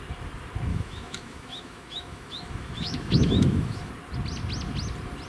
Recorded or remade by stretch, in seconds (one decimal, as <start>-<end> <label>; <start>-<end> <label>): 0.0-0.7 recorded; 0.7-3.9 remade; 3.9-5.3 recorded